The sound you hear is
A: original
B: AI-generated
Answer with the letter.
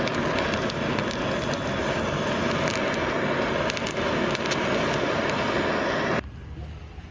A